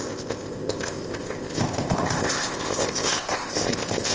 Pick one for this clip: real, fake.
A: fake